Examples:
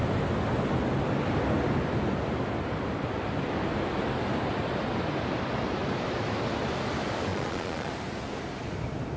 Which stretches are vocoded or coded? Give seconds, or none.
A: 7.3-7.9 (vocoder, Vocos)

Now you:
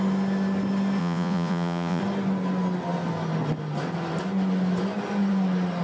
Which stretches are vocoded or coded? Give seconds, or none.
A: 1.0-2.0 (vocoder, Vocos)

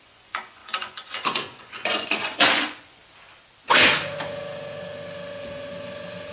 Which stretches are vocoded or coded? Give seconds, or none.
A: 0.0-3.0 (vocoder, Vocos)

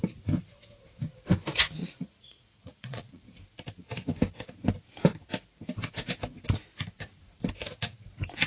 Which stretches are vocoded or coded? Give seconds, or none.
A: 1.8-3.2 (vocoder, Vocos)

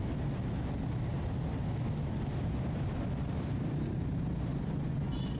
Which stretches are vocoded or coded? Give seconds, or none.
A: 4.5-5.4 (vocoder, Vocos)

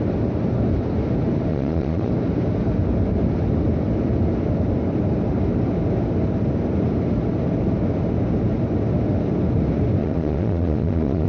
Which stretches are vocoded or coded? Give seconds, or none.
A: 1.5-2.1 (vocoder, Vocos); 10.0-11.3

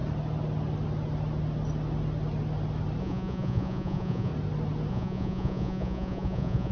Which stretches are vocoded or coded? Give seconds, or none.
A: 3.0-4.3 (vocoder, Vocos); 4.9-6.7

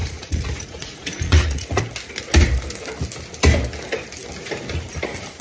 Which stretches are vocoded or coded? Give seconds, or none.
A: 0.0-1.8 (vocoder, Vocos)